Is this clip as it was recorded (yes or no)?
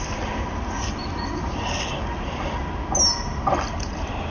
yes